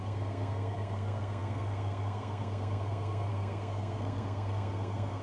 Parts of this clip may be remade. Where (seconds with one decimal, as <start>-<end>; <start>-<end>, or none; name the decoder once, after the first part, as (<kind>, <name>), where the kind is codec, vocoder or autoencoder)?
0.0-5.2 (codec, SNAC)